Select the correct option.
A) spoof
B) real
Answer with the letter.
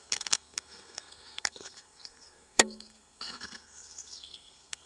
A